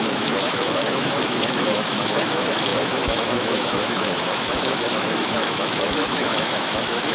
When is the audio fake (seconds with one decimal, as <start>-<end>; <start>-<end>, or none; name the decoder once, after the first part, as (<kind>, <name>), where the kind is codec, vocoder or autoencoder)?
0.0-7.1 (autoencoder, DAC-VAE)